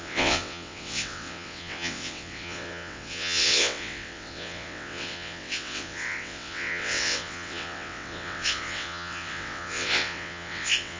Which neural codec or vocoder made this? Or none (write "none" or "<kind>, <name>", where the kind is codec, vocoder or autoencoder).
vocoder, WaveNeXt